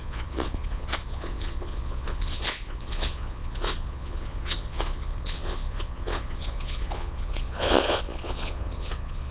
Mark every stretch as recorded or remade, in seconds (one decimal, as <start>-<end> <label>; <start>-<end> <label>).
0.0-9.3 remade